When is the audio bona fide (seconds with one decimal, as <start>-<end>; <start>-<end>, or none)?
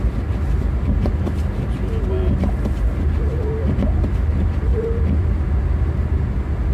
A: 0.0-4.7; 5.3-6.7